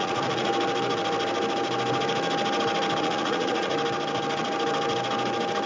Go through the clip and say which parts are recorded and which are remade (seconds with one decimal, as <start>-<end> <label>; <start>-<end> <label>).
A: 0.0-0.5 remade; 0.5-3.0 recorded; 3.0-3.7 remade; 3.7-5.7 recorded